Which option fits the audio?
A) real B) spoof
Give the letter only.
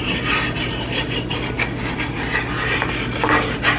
A